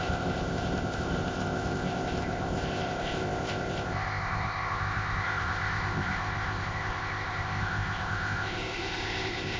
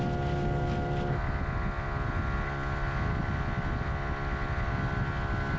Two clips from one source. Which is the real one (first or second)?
second